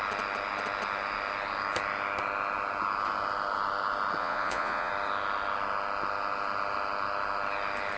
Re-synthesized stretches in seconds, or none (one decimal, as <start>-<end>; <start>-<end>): 4.2-4.9